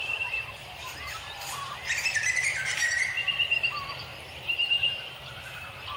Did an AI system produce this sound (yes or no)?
yes